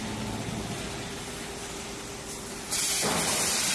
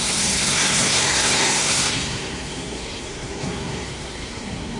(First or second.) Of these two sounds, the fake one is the second